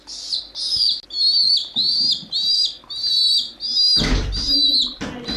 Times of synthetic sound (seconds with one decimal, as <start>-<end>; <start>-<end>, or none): none